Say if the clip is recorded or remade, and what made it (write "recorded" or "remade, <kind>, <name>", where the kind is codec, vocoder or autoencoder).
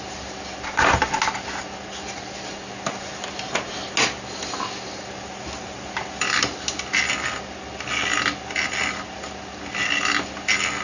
recorded